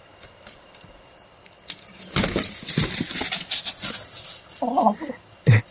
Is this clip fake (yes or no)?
no